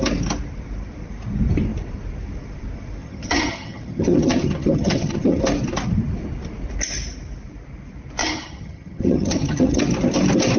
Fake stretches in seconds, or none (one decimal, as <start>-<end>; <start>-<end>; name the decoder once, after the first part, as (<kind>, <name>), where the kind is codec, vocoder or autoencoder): 3.0-5.4 (vocoder, HiFi-GAN); 8.2-9.8